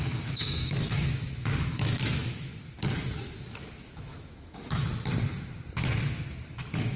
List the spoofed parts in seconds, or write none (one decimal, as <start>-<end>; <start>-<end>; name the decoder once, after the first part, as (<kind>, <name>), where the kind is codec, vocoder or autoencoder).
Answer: 0.0-2.5 (autoencoder, DAC-VAE); 3.8-4.9; 6.5-7.0